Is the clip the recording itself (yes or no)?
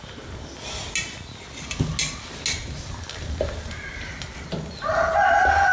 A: yes